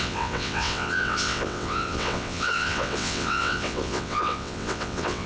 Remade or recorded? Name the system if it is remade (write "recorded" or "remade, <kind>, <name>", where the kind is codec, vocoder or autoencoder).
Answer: remade, vocoder, WaveNeXt